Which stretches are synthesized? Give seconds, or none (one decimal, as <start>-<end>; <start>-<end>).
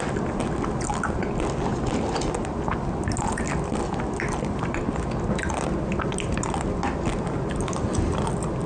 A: none